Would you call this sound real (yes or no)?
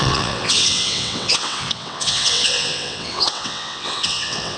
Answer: no